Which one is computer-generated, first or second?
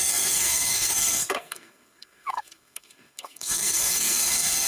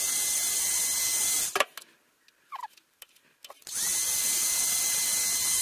first